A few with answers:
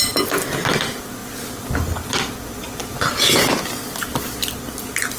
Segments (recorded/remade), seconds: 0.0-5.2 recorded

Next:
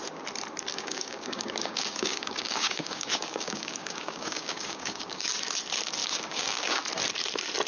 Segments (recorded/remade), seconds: 0.0-0.7 recorded; 0.7-5.3 remade; 5.3-6.0 recorded; 6.0-6.8 remade; 6.8-7.7 recorded

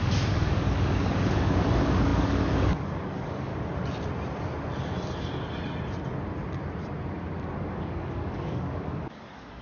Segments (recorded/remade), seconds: 0.0-3.5 remade; 3.5-7.6 recorded; 7.6-9.6 remade

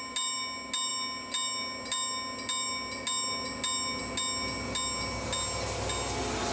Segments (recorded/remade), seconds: 0.0-6.5 recorded

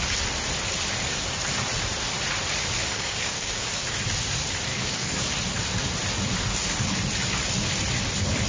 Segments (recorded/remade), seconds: 0.0-2.8 recorded; 2.8-3.7 remade; 3.7-4.7 recorded; 4.7-5.2 remade; 5.2-8.5 recorded